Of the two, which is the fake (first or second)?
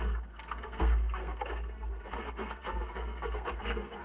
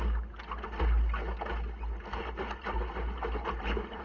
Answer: first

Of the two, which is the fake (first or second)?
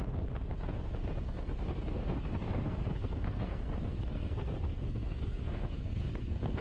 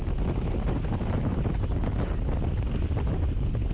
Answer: first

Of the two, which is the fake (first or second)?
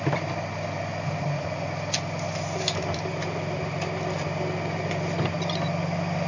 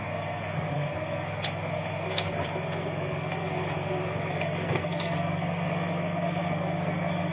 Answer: second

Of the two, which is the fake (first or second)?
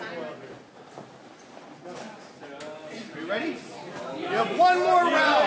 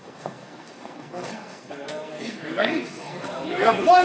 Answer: second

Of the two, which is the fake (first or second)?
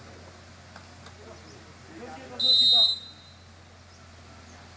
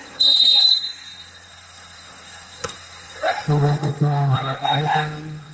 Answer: second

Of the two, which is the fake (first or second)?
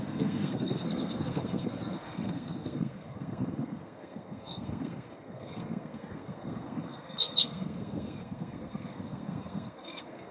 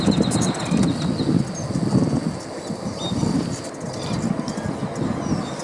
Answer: first